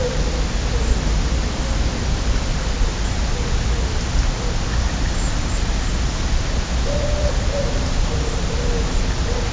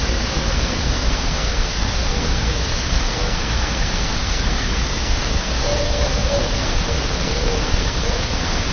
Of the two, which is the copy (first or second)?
second